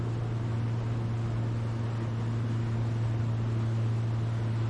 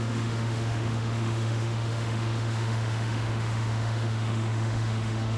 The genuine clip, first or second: first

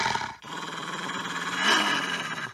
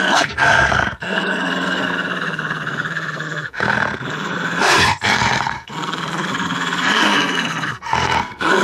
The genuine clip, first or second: first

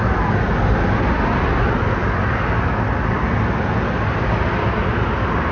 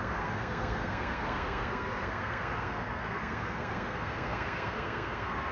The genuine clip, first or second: first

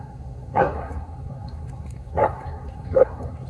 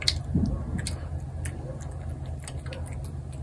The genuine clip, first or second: second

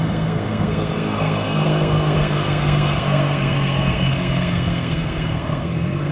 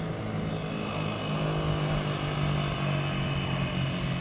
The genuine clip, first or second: second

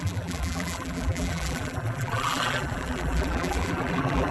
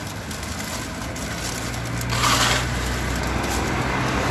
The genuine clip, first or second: second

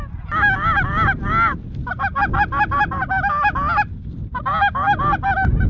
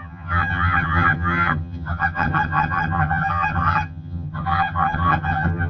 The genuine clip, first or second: first